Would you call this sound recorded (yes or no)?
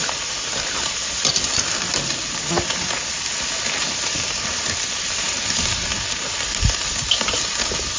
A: yes